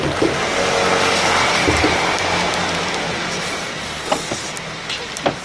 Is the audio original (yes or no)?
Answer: yes